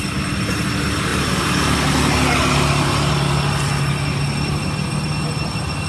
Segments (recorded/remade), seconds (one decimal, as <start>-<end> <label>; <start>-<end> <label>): 0.0-5.9 recorded